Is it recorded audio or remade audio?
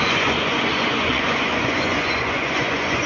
remade